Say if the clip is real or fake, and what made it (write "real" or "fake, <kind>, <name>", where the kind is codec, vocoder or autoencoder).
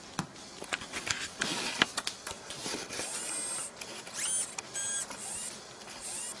real